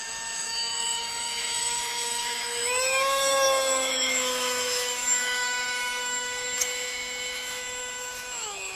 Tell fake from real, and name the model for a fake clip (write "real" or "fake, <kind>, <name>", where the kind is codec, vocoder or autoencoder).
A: fake, autoencoder, DAC-VAE